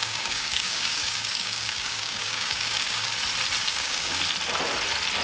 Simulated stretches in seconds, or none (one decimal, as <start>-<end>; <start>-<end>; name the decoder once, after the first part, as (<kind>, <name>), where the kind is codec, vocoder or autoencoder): 0.0-3.1 (codec, DAC); 3.6-4.2